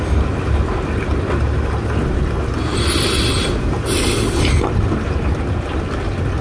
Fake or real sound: real